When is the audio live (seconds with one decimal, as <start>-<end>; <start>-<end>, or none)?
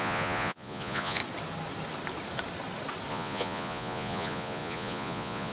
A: 1.2-3.1